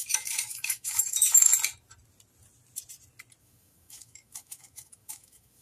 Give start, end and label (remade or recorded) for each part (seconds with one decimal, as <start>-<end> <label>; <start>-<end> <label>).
0.0-1.5 remade; 1.5-3.4 recorded; 3.4-5.6 remade